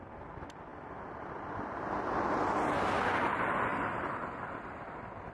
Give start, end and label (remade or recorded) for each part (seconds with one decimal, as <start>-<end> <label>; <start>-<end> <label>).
0.0-5.3 recorded